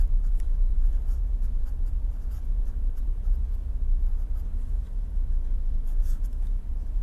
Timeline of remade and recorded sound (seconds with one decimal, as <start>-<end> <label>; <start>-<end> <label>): 0.0-0.7 remade; 0.7-1.2 recorded; 1.2-3.4 remade; 3.4-5.7 recorded; 5.7-7.0 remade